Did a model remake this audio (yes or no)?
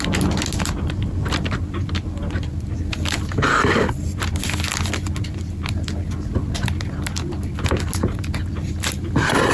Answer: no